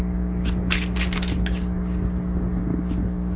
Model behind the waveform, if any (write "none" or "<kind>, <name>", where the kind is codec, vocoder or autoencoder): none